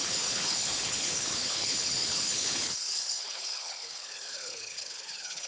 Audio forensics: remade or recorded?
remade